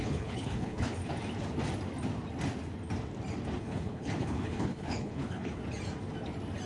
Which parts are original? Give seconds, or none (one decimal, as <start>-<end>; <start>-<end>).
1.0-3.6; 5.6-6.7

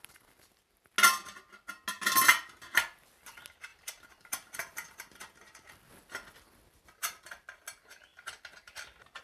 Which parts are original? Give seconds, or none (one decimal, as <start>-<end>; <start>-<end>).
0.0-3.7; 5.7-7.0; 7.6-9.2

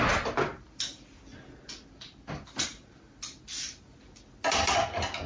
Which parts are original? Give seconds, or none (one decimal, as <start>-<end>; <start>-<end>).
0.0-5.3

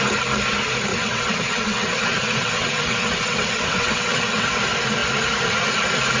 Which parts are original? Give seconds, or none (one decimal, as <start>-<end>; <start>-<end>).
0.0-0.9; 4.6-6.2